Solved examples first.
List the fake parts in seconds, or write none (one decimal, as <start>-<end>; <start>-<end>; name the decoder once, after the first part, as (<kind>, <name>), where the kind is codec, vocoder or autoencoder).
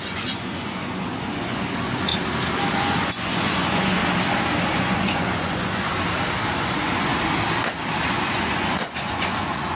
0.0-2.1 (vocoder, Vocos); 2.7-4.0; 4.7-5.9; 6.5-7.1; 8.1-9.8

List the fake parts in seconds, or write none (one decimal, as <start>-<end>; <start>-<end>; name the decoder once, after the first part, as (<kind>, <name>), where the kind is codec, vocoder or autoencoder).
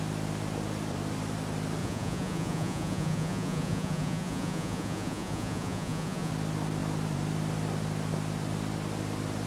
1.8-6.3 (vocoder, Vocos)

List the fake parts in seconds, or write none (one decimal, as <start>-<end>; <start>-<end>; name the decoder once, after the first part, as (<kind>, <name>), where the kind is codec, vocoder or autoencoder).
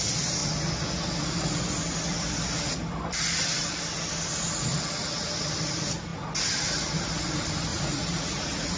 7.7-8.8 (vocoder, Vocos)